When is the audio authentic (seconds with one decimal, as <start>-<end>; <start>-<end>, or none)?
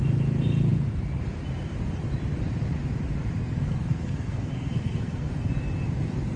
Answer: 0.0-3.4; 5.5-6.4